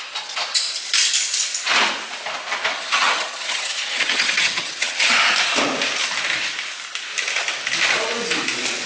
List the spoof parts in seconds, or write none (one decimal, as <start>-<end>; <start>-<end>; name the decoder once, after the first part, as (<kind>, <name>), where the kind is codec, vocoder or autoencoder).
2.7-5.1 (vocoder, HiFi-GAN)